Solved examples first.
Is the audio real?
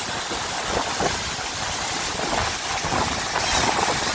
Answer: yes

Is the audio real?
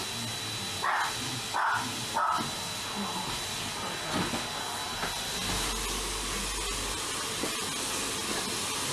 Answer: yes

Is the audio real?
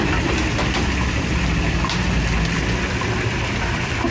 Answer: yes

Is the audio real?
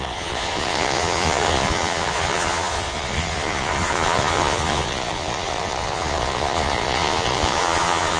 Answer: no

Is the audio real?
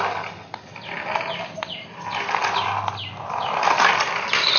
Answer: yes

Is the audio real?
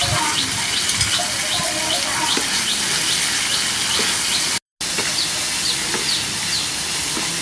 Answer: yes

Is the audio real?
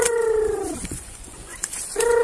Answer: no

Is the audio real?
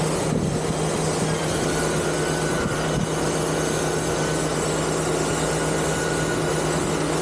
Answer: yes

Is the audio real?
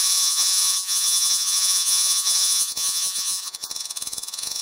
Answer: no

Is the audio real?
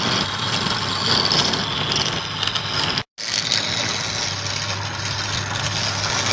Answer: yes